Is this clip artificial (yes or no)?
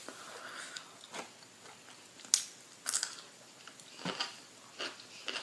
no